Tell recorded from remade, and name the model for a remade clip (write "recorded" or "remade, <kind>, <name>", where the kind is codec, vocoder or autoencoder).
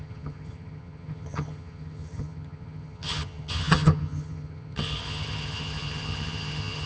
remade, vocoder, HiFi-GAN